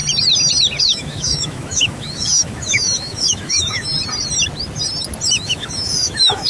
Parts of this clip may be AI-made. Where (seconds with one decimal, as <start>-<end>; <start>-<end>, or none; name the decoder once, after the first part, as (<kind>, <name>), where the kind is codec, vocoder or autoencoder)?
0.8-3.9 (autoencoder, DAC-VAE); 5.3-6.5